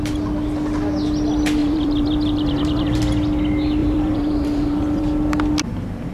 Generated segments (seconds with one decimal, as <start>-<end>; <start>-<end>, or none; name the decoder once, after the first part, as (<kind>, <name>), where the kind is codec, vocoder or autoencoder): 1.6-3.0 (vocoder, BigVGAN v2); 3.8-5.0